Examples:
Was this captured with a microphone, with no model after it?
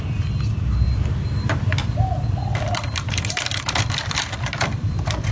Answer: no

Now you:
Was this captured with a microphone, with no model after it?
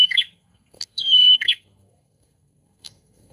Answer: no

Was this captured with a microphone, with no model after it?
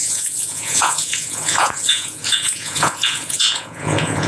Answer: no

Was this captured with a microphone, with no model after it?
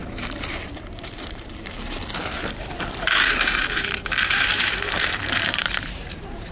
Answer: no